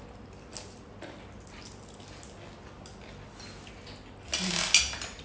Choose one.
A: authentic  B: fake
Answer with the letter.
A